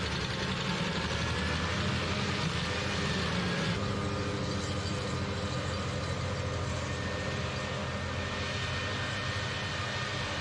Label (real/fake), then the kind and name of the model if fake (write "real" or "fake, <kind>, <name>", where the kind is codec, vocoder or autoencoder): real